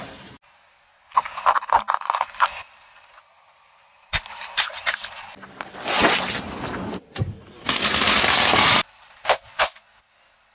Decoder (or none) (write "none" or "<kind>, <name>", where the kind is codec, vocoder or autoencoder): none